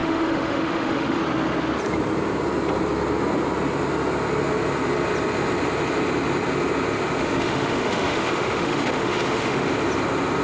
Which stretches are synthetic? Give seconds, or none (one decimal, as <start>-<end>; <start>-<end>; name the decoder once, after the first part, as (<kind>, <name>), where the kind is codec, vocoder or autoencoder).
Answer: 0.0-1.2 (autoencoder, DAC-VAE); 7.2-9.7